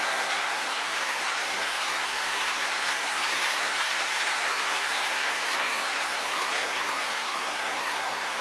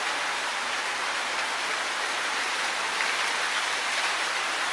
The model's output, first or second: first